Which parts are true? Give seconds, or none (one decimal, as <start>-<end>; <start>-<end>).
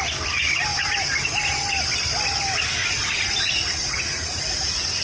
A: 0.0-2.8; 4.4-5.0